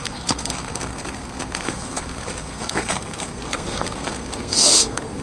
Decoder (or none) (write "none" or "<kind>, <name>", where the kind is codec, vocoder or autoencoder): codec, SNAC